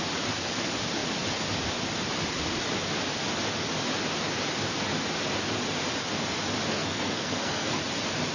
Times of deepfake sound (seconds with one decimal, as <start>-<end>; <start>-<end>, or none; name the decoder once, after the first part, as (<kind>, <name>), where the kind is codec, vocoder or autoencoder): 6.7-7.8 (codec, SNAC)